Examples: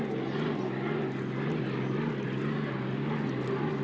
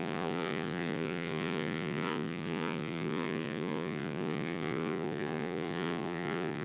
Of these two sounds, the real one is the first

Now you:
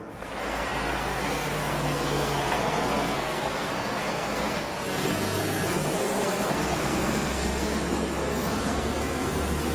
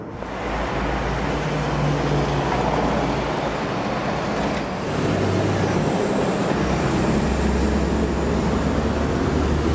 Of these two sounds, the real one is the second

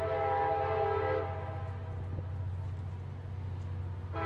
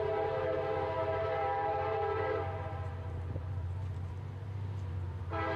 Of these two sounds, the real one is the first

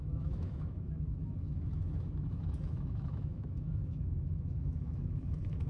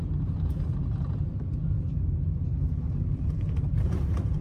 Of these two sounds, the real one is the second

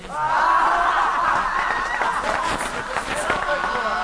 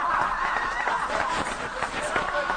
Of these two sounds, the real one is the first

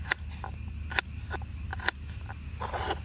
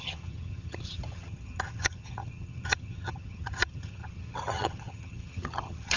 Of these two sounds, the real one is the first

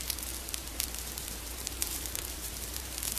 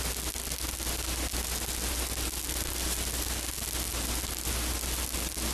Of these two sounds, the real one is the second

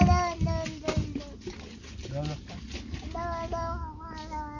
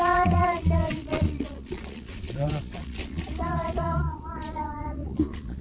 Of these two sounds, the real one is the first